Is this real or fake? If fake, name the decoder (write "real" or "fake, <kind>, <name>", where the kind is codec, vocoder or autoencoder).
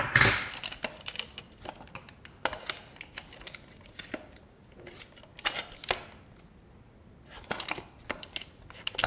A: real